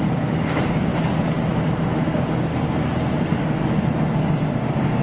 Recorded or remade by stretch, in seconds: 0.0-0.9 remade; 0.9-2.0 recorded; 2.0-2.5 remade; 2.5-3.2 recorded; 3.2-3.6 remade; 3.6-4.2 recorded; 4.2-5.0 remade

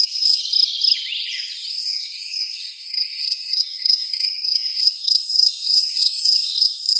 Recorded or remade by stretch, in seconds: 0.0-0.4 remade; 0.4-1.7 recorded; 1.7-7.0 remade